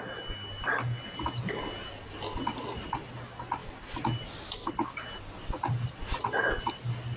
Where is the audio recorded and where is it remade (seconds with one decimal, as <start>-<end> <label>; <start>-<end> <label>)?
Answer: 0.0-7.2 recorded